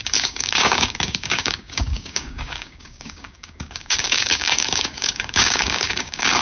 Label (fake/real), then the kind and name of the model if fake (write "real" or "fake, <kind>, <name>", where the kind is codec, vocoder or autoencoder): fake, codec, DAC